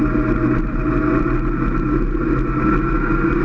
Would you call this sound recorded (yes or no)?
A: yes